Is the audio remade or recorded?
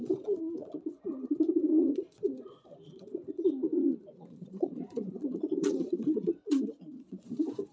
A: remade